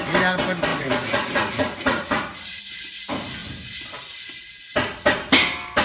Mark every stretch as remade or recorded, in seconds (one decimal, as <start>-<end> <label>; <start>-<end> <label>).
0.0-0.7 recorded; 0.7-2.6 remade; 2.6-5.8 recorded